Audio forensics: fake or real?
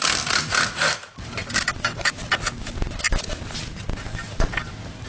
real